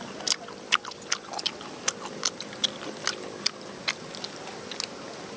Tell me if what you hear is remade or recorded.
recorded